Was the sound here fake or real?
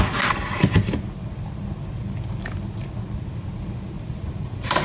real